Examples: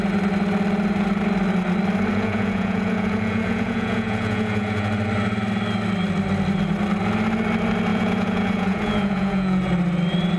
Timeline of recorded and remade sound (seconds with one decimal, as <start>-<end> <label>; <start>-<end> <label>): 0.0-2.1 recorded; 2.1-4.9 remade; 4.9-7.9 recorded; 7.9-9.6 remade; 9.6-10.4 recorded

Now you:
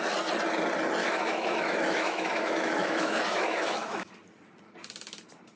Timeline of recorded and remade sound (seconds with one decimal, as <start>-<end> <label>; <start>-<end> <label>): 0.0-1.0 recorded; 1.0-4.1 remade; 4.1-5.6 recorded

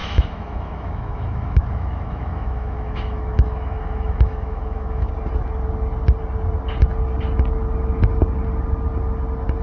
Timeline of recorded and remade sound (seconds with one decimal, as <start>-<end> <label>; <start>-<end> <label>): 0.0-5.1 remade; 5.1-9.6 recorded

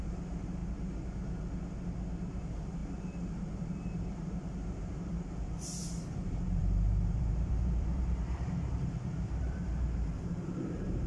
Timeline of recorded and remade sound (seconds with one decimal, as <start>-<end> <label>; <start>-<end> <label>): 0.0-0.6 remade; 0.6-2.4 recorded; 2.4-11.1 remade

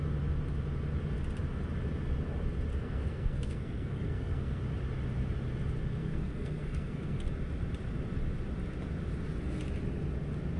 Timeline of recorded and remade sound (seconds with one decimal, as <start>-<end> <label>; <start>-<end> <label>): 0.0-2.7 recorded; 2.7-4.6 remade; 4.6-6.0 recorded; 6.0-7.3 remade; 7.3-10.6 recorded

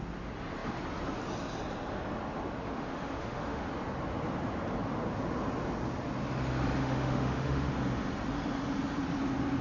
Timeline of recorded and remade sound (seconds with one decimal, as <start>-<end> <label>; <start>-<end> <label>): 0.0-2.6 recorded; 2.6-3.7 remade; 3.7-6.8 recorded; 6.8-7.7 remade; 7.7-9.6 recorded